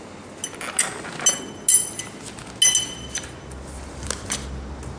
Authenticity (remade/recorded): recorded